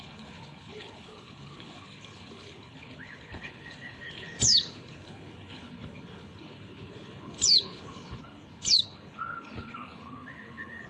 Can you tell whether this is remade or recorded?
remade